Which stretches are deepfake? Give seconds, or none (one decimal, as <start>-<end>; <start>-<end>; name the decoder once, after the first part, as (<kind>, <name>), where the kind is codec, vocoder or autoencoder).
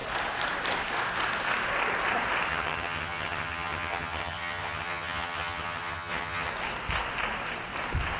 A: 2.5-6.5 (vocoder, HiFi-GAN)